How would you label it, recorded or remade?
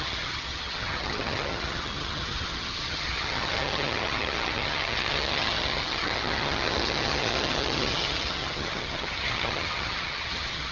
remade